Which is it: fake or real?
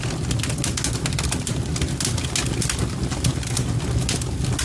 real